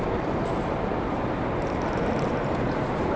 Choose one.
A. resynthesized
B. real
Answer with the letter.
A